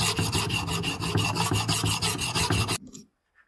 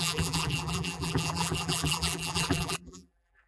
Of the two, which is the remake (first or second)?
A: second